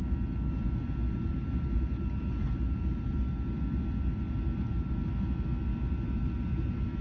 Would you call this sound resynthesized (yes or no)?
no